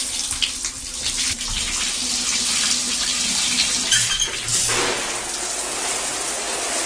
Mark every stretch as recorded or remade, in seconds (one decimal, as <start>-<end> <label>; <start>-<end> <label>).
0.0-6.9 recorded